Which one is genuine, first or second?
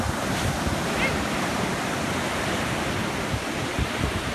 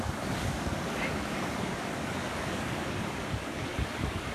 first